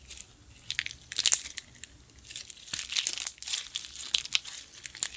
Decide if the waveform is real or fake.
real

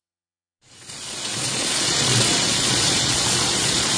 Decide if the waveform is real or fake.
fake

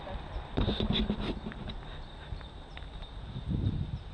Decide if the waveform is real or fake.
real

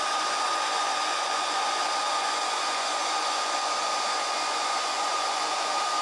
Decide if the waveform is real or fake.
fake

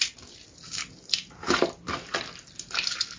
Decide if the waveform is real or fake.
real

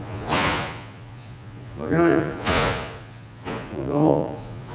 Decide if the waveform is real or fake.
fake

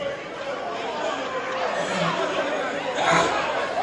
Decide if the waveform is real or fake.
real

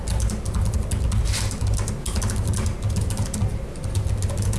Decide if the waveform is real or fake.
real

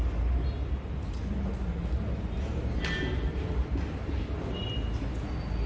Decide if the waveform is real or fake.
real